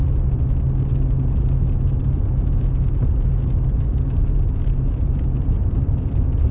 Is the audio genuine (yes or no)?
yes